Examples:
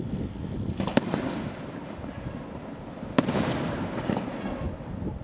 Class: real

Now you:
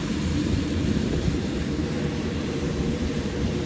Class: fake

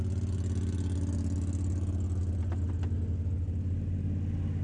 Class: real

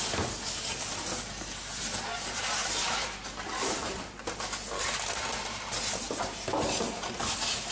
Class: real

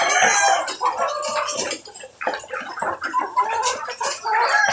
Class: real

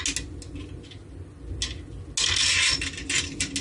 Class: real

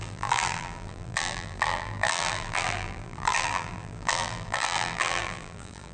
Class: fake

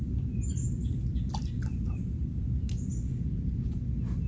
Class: real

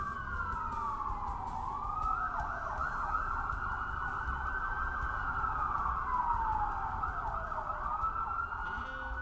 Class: real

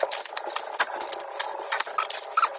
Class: real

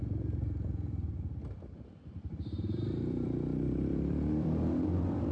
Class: fake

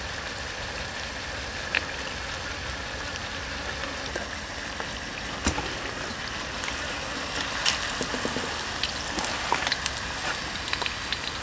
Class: real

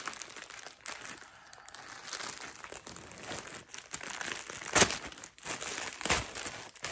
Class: real